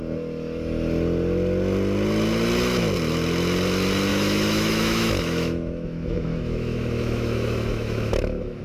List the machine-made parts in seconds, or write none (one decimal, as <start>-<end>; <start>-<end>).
4.1-8.6